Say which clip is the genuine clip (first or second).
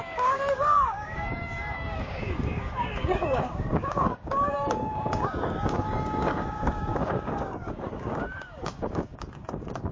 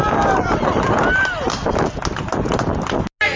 second